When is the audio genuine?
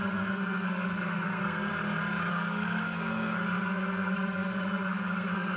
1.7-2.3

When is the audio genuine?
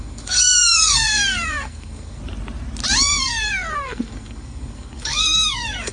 2.2-3.0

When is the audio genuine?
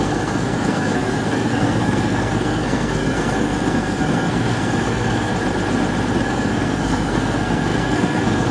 5.3-6.2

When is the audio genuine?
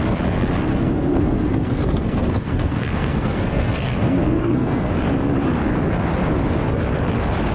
0.0-0.7; 4.9-7.5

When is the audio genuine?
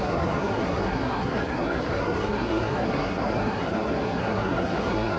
none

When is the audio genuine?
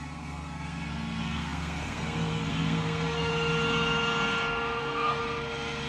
3.3-4.8; 5.2-5.9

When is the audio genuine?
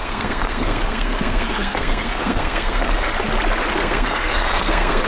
3.1-3.7